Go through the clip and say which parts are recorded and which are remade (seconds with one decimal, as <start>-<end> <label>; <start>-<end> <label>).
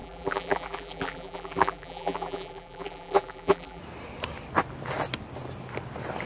0.0-3.8 remade; 3.8-6.3 recorded